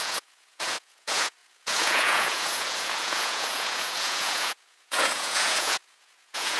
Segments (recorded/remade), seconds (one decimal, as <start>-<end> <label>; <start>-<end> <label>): 0.0-6.6 remade